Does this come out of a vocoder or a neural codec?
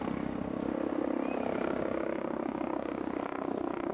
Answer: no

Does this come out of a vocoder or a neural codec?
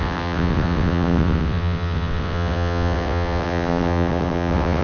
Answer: yes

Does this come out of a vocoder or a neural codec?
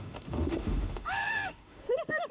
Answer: yes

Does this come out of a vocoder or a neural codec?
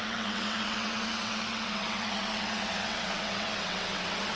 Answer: yes